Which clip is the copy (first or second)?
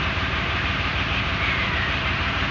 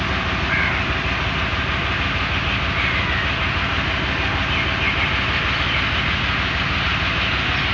first